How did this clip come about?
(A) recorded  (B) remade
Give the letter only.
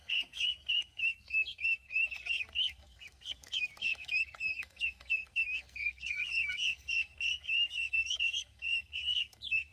B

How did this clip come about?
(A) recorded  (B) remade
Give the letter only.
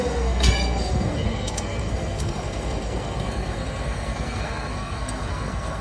B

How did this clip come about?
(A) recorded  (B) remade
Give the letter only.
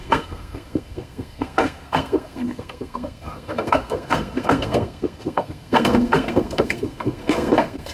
B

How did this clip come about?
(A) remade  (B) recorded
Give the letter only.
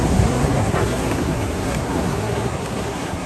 A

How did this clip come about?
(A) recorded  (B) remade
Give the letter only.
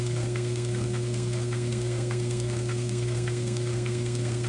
B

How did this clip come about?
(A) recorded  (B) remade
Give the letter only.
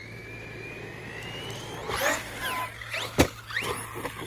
A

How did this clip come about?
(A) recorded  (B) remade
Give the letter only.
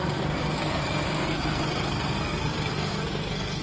B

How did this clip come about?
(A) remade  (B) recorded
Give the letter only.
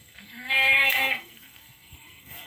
A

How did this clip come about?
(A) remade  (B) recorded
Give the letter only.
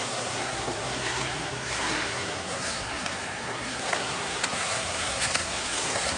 A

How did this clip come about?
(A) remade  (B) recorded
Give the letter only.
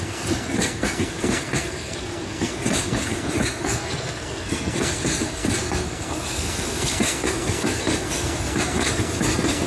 A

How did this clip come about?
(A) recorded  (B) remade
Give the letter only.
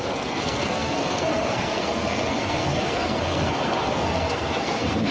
B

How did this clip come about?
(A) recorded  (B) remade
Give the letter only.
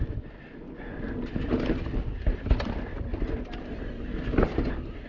A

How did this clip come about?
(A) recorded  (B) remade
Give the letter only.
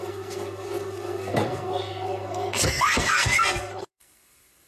B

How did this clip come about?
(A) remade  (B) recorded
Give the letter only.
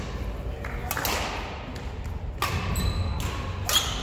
B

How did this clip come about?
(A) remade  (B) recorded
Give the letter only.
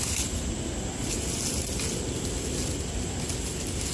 B